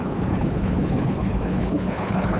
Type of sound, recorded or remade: remade